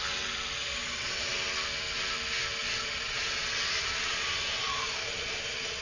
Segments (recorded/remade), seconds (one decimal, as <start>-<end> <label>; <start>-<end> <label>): 0.0-0.6 recorded; 0.6-1.3 remade; 1.3-2.6 recorded; 2.6-5.8 remade